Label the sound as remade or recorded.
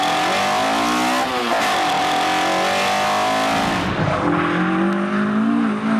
recorded